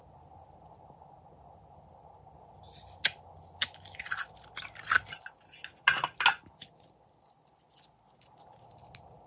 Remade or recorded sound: recorded